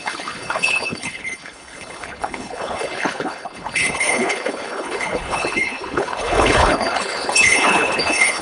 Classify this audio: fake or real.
fake